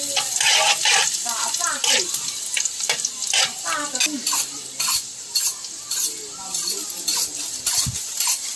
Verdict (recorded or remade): recorded